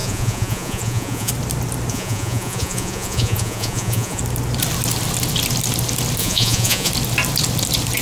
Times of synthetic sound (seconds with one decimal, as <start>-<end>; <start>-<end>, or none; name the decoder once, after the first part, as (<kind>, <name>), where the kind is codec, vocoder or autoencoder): 0.0-1.3 (vocoder, Vocos); 1.9-4.2; 6.2-6.9